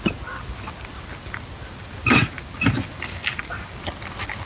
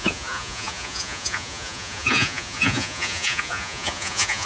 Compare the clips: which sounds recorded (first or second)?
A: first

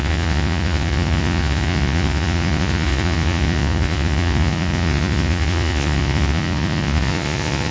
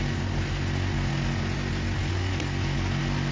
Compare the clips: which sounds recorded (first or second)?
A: second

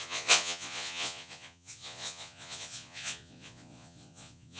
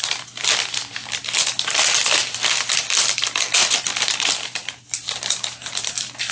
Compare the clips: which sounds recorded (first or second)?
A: second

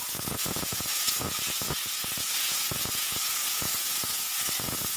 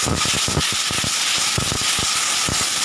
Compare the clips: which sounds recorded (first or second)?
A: second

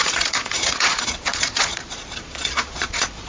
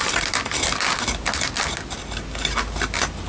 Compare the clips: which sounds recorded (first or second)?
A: second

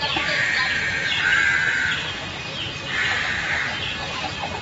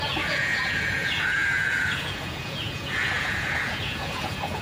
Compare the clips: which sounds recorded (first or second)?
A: first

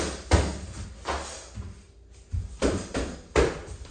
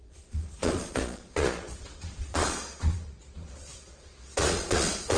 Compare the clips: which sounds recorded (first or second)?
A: first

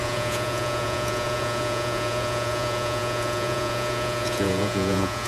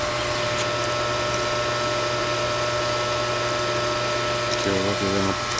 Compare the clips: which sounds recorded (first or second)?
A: second